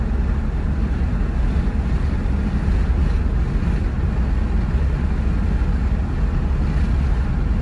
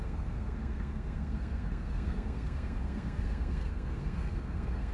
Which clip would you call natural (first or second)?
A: first